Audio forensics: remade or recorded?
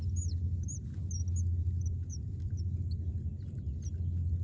recorded